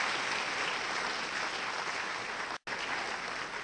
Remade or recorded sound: recorded